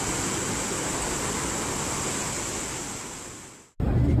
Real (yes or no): yes